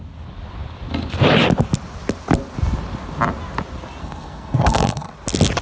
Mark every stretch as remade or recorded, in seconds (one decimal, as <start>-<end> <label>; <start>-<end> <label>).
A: 0.0-4.0 recorded; 4.0-5.1 remade; 5.1-5.6 recorded

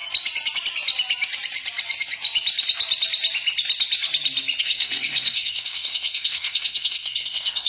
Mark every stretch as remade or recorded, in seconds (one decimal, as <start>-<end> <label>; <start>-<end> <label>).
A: 0.0-4.6 recorded; 4.6-7.7 remade

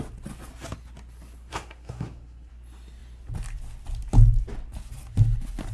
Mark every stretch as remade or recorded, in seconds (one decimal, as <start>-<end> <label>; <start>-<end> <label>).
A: 0.0-1.5 recorded; 1.5-2.5 remade; 2.5-5.7 recorded

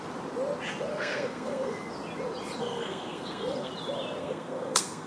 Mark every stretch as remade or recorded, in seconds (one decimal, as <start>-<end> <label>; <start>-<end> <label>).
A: 0.0-0.9 recorded; 0.9-1.9 remade; 1.9-2.6 recorded; 2.6-3.7 remade; 3.7-4.2 recorded; 4.2-5.1 remade

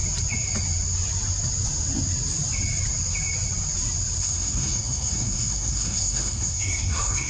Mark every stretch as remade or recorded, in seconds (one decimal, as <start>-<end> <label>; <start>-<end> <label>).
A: 0.0-4.2 recorded; 4.2-7.3 remade

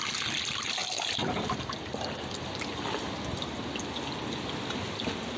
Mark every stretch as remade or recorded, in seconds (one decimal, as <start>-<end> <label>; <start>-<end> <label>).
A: 0.0-5.4 recorded

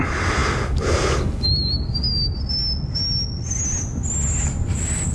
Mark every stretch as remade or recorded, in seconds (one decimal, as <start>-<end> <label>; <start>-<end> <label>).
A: 0.0-5.1 recorded

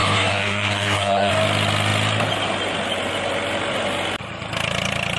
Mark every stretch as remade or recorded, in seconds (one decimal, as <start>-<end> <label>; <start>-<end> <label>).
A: 0.0-1.3 remade; 1.3-5.2 recorded